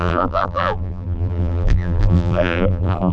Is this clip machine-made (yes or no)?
yes